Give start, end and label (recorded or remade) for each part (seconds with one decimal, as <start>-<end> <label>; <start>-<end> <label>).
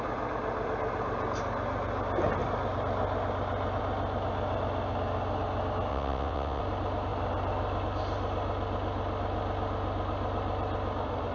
0.0-5.9 recorded; 5.9-6.6 remade; 6.6-11.3 recorded